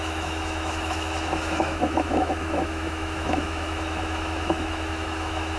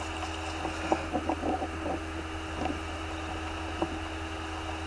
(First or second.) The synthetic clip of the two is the first